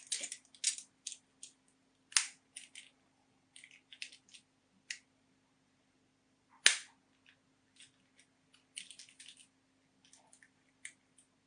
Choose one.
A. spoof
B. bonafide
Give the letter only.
B